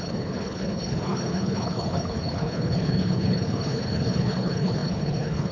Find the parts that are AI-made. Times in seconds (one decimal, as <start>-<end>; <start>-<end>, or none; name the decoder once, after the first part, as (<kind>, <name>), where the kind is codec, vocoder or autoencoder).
0.0-5.5 (codec, HILCodec)